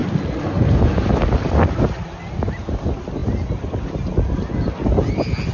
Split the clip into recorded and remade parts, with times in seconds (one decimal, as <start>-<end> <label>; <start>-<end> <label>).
0.0-5.5 recorded